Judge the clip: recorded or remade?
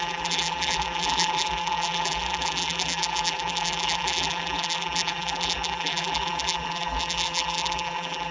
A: remade